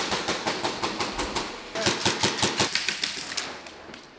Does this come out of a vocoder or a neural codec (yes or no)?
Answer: no